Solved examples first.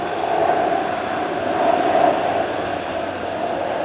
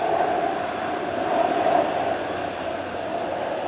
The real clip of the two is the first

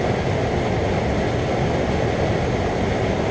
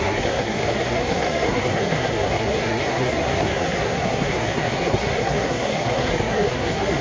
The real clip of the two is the first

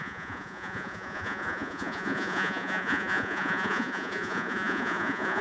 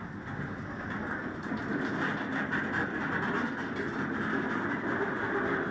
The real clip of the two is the second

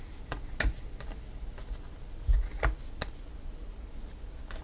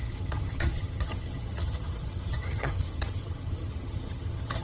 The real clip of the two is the first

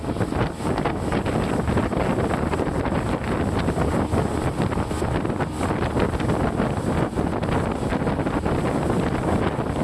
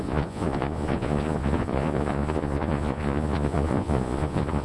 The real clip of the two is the first